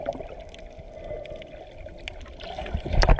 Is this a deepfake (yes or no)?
no